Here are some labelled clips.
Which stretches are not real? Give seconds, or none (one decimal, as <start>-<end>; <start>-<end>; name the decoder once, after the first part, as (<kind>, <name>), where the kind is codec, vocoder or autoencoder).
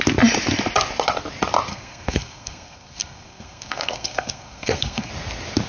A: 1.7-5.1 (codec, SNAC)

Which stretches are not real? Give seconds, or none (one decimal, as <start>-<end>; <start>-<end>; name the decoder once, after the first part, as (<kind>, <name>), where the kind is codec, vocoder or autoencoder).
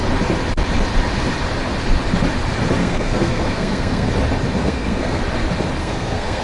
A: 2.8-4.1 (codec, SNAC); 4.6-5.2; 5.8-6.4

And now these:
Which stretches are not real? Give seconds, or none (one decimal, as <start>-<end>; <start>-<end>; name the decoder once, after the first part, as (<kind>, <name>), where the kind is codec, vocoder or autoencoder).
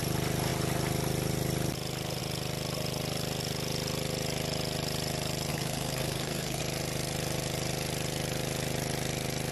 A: 5.5-6.6 (codec, SNAC)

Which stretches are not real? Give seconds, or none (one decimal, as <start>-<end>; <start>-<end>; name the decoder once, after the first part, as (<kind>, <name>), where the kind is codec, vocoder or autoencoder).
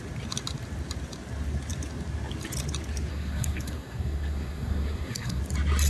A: 3.1-5.4 (codec, SNAC)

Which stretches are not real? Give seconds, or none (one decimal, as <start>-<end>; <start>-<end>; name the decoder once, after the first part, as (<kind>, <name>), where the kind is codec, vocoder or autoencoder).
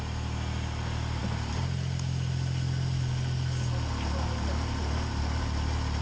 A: none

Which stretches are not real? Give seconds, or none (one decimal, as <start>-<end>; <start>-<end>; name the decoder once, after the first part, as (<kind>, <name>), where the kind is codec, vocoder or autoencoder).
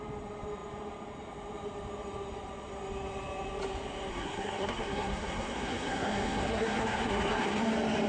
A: 4.1-7.6 (codec, SNAC)